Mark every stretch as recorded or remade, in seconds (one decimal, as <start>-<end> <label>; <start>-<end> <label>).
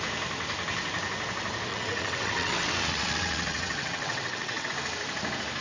0.0-1.7 recorded; 1.7-4.7 remade; 4.7-5.6 recorded